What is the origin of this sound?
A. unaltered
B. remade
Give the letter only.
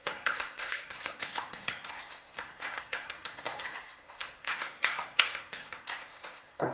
B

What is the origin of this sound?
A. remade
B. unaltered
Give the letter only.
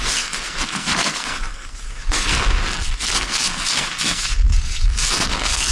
A